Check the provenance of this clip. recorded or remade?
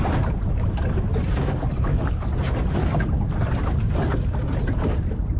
recorded